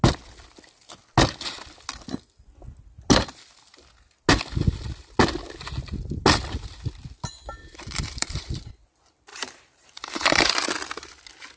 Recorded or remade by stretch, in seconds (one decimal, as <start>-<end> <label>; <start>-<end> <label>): 0.0-7.6 recorded; 7.6-8.7 remade; 8.7-9.3 recorded; 9.3-10.7 remade; 10.7-11.6 recorded